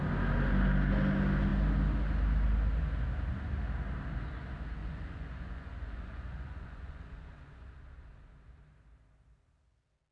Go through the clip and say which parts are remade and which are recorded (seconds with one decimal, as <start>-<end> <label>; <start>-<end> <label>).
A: 0.0-4.8 recorded; 4.8-7.7 remade; 7.7-10.1 recorded